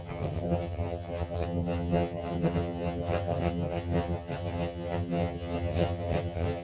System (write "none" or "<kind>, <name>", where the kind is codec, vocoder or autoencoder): vocoder, HiFi-GAN